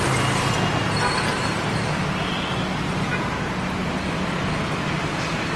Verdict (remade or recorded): recorded